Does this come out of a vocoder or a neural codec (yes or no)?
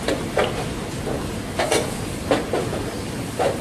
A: yes